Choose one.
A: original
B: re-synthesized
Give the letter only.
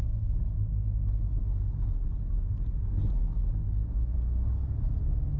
A